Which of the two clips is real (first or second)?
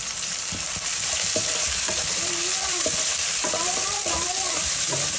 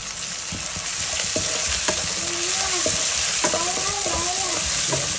second